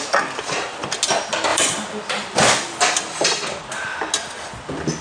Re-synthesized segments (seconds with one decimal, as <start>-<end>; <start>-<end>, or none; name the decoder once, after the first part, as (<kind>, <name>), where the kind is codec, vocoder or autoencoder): 1.5-2.4 (vocoder, BigVGAN v2)